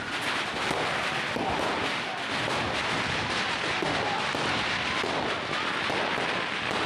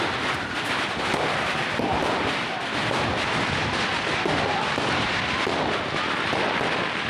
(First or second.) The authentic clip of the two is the first